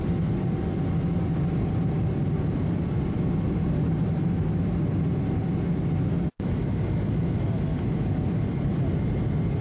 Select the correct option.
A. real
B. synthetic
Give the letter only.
A